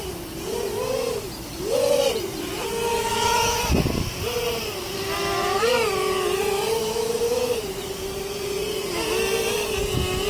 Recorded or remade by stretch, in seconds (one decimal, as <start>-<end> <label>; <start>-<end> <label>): 0.0-2.9 recorded; 2.9-3.6 remade; 3.6-6.8 recorded; 6.8-7.5 remade; 7.5-10.3 recorded